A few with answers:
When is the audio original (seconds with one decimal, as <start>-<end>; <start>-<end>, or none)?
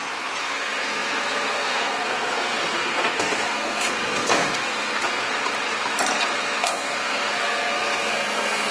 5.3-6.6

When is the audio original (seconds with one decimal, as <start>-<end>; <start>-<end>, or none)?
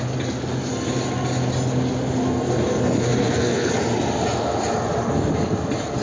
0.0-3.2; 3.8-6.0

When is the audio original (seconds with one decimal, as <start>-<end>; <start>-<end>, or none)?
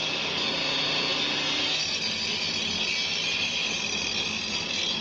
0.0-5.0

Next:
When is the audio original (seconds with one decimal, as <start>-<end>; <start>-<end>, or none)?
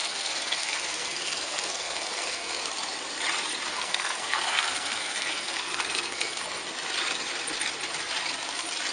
2.6-3.7; 6.6-8.9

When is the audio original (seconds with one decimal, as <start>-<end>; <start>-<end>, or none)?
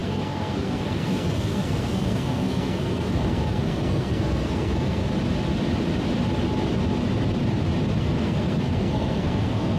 5.0-8.0